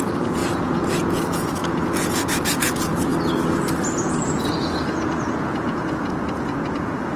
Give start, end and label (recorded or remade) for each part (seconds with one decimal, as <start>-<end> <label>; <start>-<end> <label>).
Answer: 0.0-3.1 remade; 3.1-4.0 recorded; 4.0-7.2 remade